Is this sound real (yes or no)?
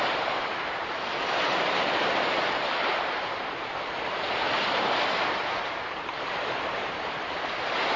no